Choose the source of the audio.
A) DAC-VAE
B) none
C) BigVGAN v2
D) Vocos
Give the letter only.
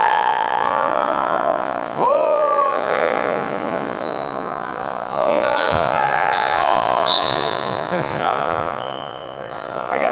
D